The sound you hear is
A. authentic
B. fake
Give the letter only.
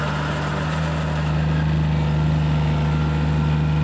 A